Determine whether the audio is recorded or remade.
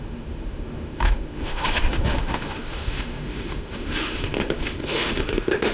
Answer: remade